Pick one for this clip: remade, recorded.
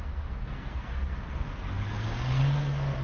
remade